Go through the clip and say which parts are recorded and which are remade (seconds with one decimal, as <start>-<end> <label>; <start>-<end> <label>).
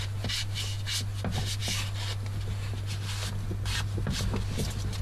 0.0-5.0 recorded